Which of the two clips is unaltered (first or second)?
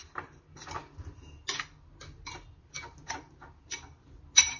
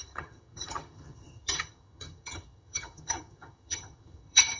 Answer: first